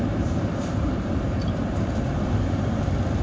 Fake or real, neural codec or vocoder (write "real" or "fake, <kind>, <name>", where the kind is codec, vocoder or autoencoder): fake, vocoder, BigVGAN v2